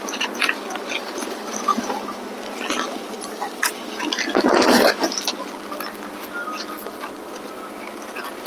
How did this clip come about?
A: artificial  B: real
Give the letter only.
B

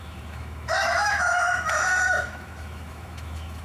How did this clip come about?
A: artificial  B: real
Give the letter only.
A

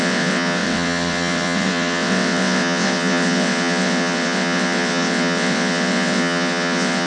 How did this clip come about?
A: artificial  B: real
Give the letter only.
A